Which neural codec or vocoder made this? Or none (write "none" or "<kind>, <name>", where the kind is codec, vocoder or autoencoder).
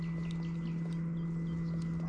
none